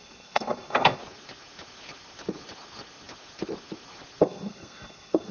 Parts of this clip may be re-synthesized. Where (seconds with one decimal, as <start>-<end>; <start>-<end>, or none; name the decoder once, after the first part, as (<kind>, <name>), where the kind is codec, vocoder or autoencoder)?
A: 0.0-1.0 (codec, SNAC); 4.2-5.3